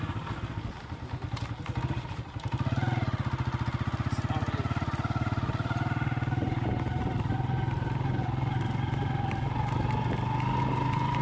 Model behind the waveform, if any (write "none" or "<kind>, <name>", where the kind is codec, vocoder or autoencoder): none